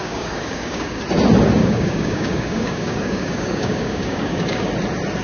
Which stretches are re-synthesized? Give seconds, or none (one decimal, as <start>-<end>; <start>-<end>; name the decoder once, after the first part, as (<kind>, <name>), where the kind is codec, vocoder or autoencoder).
0.0-1.0 (codec, DAC); 1.6-4.7